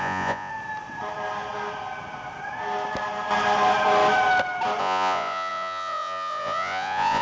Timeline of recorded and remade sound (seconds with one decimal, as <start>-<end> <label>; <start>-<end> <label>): 0.0-0.5 remade; 0.5-4.8 recorded; 4.8-7.2 remade